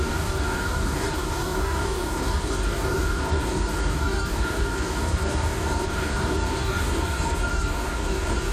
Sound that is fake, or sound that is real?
fake